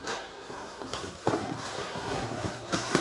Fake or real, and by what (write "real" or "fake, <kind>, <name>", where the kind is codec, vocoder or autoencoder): fake, codec, SNAC